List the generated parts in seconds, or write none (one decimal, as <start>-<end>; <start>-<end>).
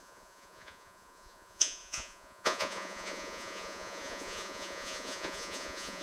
0.0-6.0